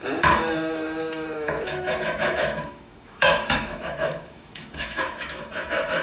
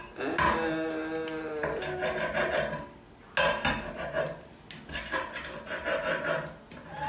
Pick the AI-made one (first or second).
first